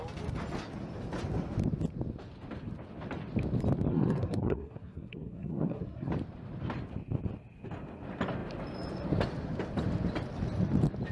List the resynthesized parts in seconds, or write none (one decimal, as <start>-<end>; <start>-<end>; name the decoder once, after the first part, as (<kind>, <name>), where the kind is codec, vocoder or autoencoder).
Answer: 3.9-6.1 (codec, SNAC)